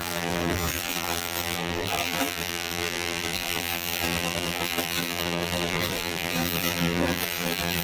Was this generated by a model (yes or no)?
yes